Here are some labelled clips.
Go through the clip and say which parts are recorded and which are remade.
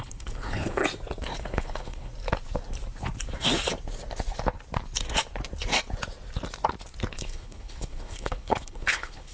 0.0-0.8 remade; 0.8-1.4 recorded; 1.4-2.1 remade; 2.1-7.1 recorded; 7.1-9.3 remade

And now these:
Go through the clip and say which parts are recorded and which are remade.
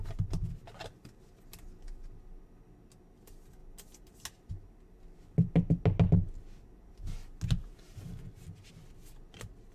0.0-9.7 recorded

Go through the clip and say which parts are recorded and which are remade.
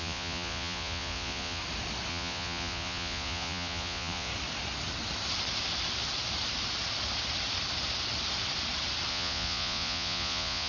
0.0-1.6 remade; 1.6-2.1 recorded; 2.1-4.3 remade; 4.3-9.1 recorded; 9.1-10.7 remade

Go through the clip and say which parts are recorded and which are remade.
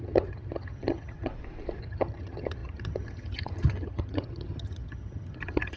0.0-1.3 remade; 1.3-1.8 recorded; 1.8-5.8 remade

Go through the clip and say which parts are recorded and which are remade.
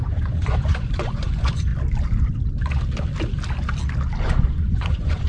0.0-1.7 remade; 1.7-4.2 recorded; 4.2-5.3 remade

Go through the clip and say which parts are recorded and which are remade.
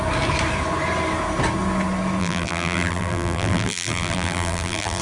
0.0-2.2 recorded; 2.2-5.0 remade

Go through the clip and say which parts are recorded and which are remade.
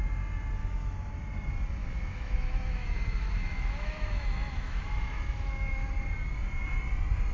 0.0-0.6 recorded; 0.6-1.1 remade; 1.1-1.8 recorded; 1.8-5.9 remade; 5.9-7.3 recorded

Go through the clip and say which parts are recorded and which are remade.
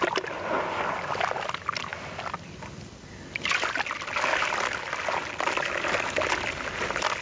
0.0-7.2 recorded